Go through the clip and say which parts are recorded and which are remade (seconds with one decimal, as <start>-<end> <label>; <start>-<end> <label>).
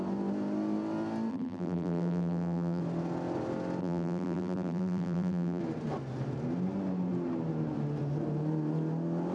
0.0-1.3 recorded; 1.3-2.8 remade; 2.8-3.8 recorded; 3.8-5.6 remade; 5.6-9.3 recorded